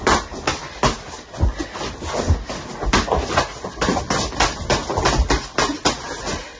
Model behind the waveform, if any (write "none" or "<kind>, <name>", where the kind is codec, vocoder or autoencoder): none